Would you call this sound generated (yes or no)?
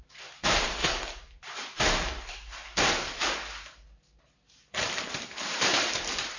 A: yes